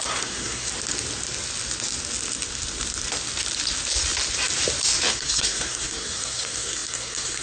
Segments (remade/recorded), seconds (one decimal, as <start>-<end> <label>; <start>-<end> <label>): 0.0-0.7 remade; 0.7-5.1 recorded; 5.1-7.4 remade